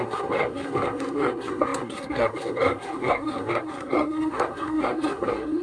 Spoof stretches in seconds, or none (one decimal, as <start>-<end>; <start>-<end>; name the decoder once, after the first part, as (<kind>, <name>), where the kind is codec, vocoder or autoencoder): 0.0-5.6 (codec, SNAC)